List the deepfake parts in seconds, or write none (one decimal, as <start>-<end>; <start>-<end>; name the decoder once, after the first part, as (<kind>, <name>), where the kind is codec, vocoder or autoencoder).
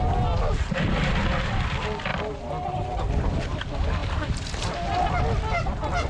none